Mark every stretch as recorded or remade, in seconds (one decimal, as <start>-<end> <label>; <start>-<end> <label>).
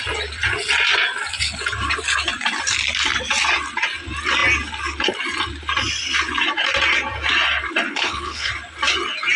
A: 0.0-7.9 recorded; 7.9-8.5 remade; 8.5-9.4 recorded